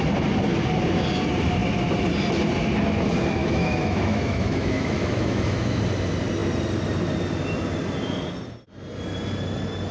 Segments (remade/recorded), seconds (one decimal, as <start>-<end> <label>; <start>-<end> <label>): 0.0-3.4 recorded; 3.4-5.8 remade; 5.8-9.9 recorded